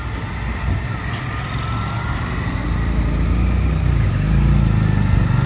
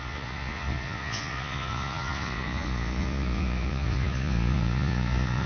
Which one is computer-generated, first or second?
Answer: second